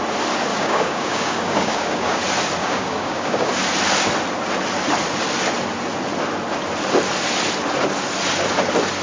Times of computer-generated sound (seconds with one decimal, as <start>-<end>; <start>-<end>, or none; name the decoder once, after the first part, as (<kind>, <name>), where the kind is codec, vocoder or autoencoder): 0.5-2.2 (codec, DAC); 2.6-3.5